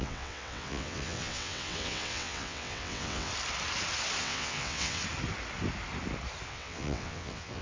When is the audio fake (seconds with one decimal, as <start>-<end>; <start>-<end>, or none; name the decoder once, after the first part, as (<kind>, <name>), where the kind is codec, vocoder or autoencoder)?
0.0-3.3 (vocoder, WaveNeXt); 4.2-5.0; 6.5-7.6